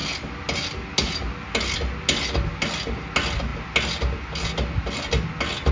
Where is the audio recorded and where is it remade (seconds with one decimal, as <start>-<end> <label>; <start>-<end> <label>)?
0.0-5.7 recorded